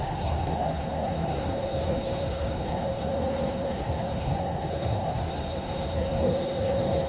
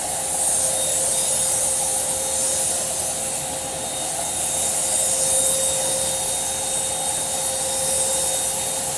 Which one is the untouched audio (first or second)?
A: second